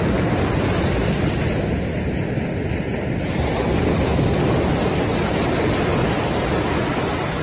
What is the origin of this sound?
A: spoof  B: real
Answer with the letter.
B